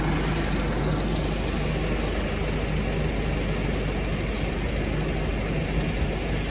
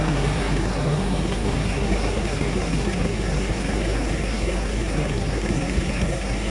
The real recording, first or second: first